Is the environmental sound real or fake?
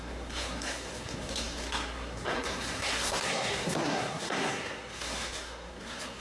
fake